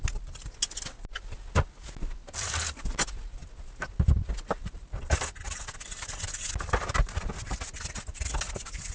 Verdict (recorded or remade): recorded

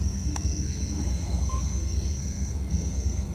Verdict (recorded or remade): remade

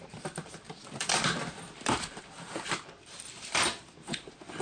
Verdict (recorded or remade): remade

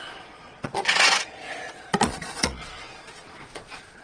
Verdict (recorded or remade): remade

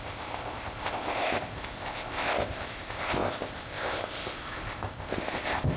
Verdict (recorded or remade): remade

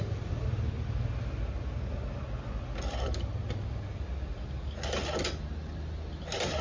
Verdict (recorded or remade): recorded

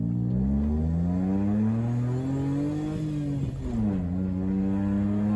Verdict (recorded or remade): recorded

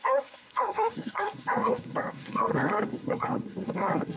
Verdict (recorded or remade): remade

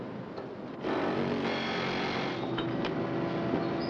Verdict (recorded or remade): recorded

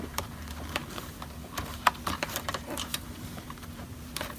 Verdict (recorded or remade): remade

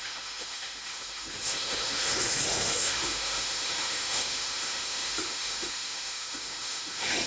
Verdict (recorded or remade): remade